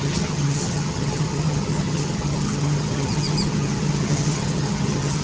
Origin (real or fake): fake